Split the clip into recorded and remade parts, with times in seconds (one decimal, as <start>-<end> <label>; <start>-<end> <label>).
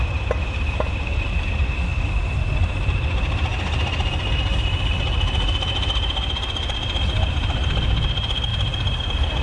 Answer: 0.0-9.4 recorded